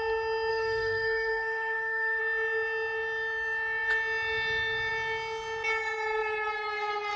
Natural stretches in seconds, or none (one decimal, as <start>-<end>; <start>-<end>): 0.0-0.5; 2.2-7.2